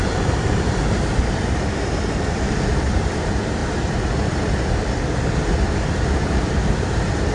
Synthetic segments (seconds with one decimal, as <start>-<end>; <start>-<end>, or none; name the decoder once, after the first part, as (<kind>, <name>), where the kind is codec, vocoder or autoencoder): 0.0-3.6 (vocoder, BigVGAN v2); 5.9-7.3